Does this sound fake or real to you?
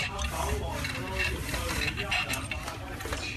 real